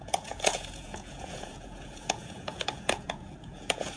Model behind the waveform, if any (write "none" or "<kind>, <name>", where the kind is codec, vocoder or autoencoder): vocoder, Vocos